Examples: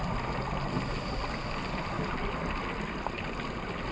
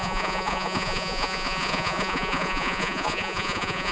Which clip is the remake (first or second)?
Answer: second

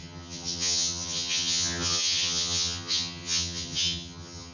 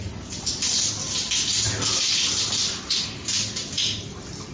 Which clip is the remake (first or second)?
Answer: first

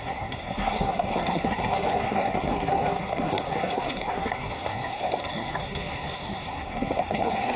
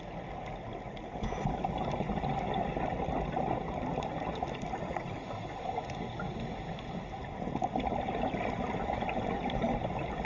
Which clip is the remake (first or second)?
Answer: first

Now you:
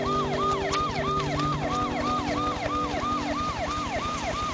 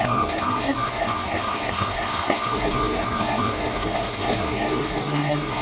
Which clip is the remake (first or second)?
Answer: second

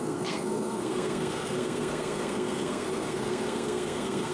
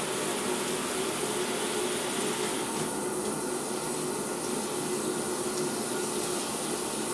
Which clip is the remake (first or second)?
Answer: first